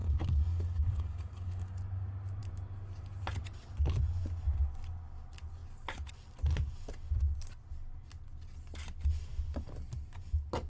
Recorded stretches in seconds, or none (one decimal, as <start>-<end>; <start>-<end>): 1.7-10.7